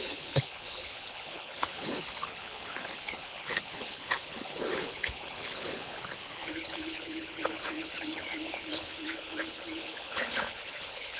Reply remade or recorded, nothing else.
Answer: remade